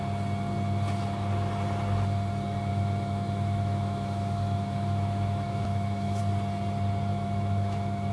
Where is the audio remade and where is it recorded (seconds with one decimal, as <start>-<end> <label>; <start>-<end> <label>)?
0.0-2.7 recorded; 2.7-6.2 remade; 6.2-7.1 recorded; 7.1-8.1 remade

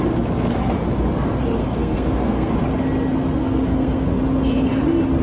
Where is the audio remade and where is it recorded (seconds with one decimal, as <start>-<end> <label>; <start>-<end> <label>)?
0.0-1.6 recorded; 1.6-2.5 remade; 2.5-3.4 recorded; 3.4-4.2 remade; 4.2-5.2 recorded

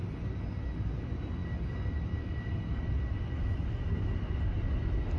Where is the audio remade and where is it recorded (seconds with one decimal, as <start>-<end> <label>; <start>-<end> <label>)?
0.0-5.2 recorded

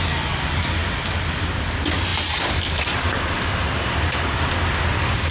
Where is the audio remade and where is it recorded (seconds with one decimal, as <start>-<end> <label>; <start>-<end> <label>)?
0.0-5.3 recorded

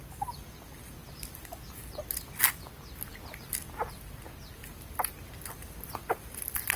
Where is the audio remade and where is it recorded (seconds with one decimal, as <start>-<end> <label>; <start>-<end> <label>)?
0.0-1.0 recorded; 1.0-2.0 remade; 2.0-4.6 recorded; 4.6-5.3 remade; 5.3-6.8 recorded

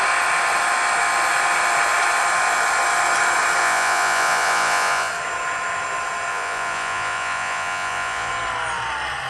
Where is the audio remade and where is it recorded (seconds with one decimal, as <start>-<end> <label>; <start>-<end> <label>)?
0.0-3.6 recorded; 3.6-5.1 remade; 5.1-6.3 recorded; 6.3-8.3 remade; 8.3-9.3 recorded

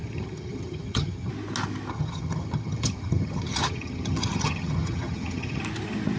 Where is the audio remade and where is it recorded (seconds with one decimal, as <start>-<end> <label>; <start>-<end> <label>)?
0.0-1.3 remade; 1.3-1.9 recorded; 1.9-5.6 remade; 5.6-6.2 recorded

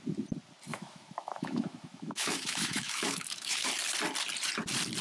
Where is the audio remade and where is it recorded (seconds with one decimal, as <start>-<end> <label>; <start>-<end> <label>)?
0.0-0.7 recorded; 0.7-3.7 remade; 3.7-5.0 recorded